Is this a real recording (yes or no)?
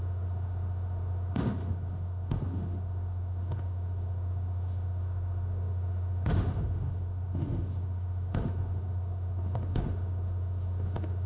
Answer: no